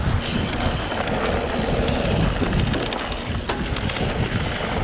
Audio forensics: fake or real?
real